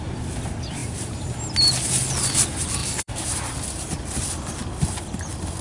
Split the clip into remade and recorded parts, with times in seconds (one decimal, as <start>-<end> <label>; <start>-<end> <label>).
0.0-0.8 recorded; 0.8-1.4 remade; 1.4-2.8 recorded; 2.8-4.0 remade; 4.0-5.6 recorded